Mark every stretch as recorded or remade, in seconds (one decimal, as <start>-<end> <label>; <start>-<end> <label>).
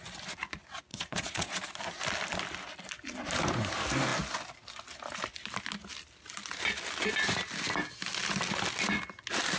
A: 0.0-0.9 recorded; 0.9-1.8 remade; 1.8-9.6 recorded